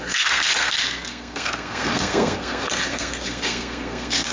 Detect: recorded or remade remade